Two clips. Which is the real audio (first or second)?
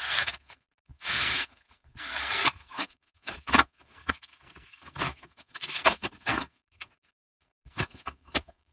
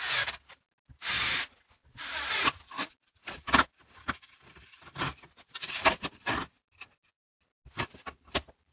second